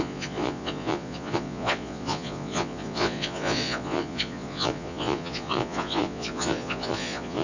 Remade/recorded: remade